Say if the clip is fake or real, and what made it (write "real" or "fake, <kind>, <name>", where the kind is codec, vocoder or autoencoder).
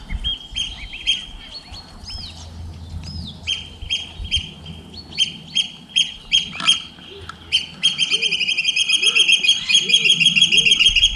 real